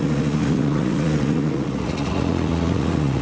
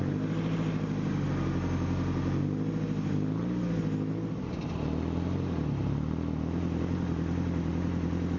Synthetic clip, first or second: first